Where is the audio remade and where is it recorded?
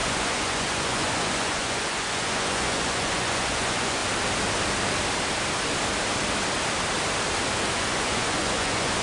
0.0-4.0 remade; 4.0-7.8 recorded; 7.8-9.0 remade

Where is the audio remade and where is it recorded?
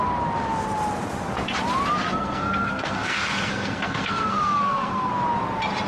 0.0-2.1 recorded; 2.1-5.1 remade; 5.1-5.9 recorded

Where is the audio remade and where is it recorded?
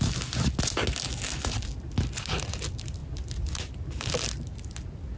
0.0-5.2 recorded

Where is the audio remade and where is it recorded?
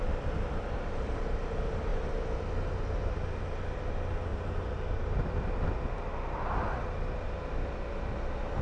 0.0-8.6 recorded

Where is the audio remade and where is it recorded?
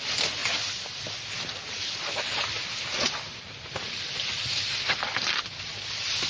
0.0-6.3 recorded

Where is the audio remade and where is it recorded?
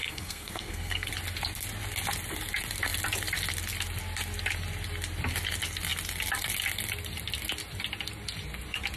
0.0-1.1 remade; 1.1-9.0 recorded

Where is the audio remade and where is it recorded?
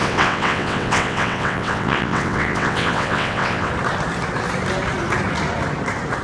0.0-3.7 remade; 3.7-6.2 recorded